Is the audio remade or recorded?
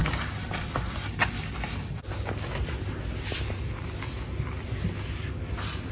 recorded